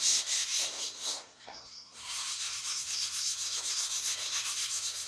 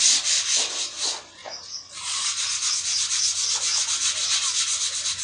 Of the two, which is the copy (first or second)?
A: first